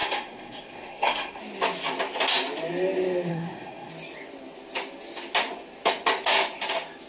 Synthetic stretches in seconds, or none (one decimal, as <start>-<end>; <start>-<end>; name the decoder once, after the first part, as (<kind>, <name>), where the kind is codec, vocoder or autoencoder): 0.0-1.4 (codec, SNAC); 3.3-3.9